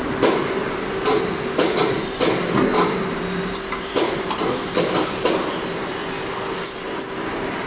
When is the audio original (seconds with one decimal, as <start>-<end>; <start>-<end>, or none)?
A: 1.8-3.1; 6.0-7.2